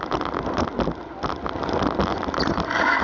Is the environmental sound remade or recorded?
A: recorded